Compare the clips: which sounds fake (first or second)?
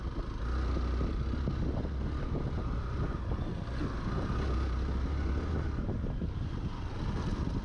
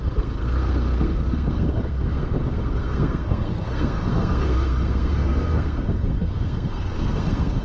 second